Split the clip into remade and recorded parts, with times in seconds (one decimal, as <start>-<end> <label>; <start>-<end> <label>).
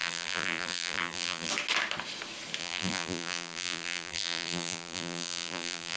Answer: 0.0-1.5 remade; 1.5-2.6 recorded; 2.6-6.0 remade